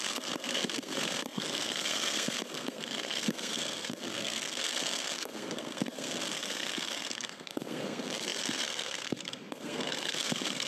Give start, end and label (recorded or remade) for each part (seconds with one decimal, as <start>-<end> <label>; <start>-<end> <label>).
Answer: 0.0-10.7 remade